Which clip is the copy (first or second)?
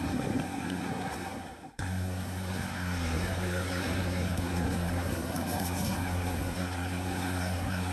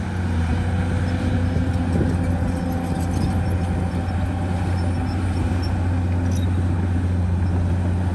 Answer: first